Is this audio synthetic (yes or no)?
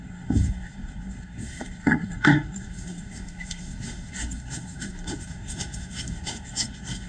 yes